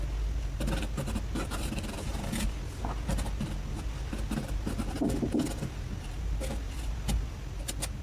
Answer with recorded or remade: recorded